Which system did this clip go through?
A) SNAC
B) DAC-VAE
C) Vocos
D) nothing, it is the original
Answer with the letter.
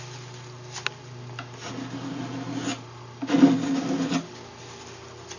D